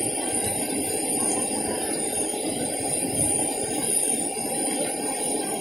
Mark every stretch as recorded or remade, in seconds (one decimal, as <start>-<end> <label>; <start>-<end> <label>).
0.0-0.4 recorded; 0.4-1.1 remade; 1.1-5.6 recorded